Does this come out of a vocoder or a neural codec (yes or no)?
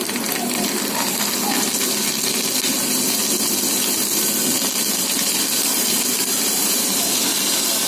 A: no